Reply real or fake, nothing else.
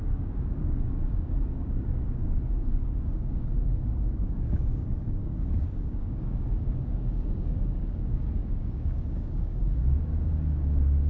fake